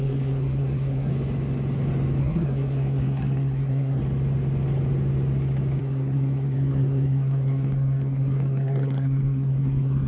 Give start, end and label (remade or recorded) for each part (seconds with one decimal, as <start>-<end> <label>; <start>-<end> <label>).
0.0-1.1 remade; 1.1-2.2 recorded; 2.2-4.0 remade; 4.0-5.8 recorded; 5.8-10.1 remade